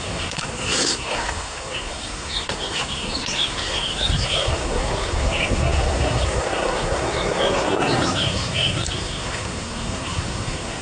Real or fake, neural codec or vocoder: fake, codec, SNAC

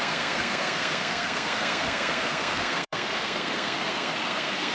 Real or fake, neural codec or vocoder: fake, codec, SNAC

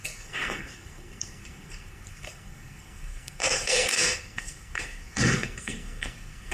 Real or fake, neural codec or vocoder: fake, codec, SNAC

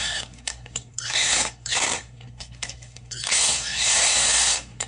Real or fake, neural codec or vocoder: fake, codec, SNAC